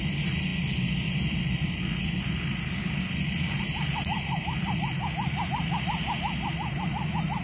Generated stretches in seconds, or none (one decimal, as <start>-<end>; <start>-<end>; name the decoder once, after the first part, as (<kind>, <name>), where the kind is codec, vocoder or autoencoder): none